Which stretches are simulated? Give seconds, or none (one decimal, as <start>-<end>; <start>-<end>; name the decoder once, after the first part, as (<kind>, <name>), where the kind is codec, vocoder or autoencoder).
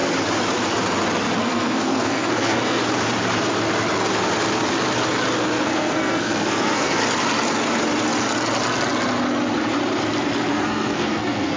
1.4-2.8 (codec, SNAC); 5.6-7.0; 10.5-11.6